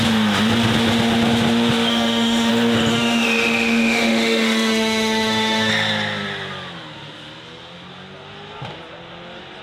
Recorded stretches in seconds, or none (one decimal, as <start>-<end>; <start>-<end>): 0.0-1.9; 2.5-2.9; 5.7-9.6